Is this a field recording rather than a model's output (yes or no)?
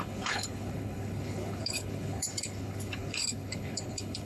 no